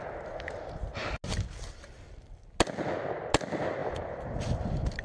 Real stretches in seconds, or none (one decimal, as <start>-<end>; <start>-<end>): 0.0-5.0